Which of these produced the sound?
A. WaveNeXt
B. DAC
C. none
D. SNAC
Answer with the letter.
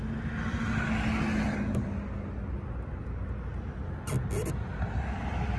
C